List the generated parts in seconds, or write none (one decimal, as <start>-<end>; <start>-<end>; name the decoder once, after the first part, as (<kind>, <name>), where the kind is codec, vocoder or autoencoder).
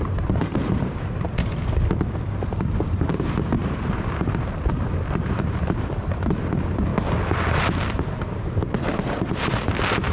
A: 0.0-1.6 (vocoder, BigVGAN v2); 2.4-6.9; 7.6-10.1